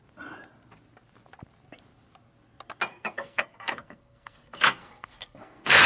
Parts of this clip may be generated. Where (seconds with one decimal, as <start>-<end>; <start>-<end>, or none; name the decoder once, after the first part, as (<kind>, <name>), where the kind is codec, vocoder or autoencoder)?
2.9-5.9 (codec, SNAC)